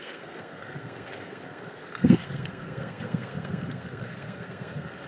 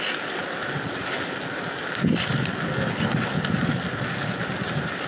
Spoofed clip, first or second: first